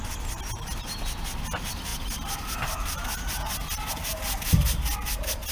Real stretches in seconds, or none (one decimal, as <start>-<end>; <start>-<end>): 0.0-5.5